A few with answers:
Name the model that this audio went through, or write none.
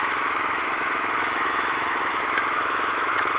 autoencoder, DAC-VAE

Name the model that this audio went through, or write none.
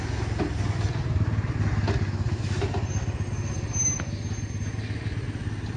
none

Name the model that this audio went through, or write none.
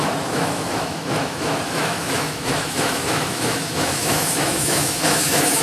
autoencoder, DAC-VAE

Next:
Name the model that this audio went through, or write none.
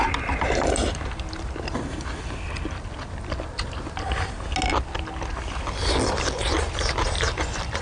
none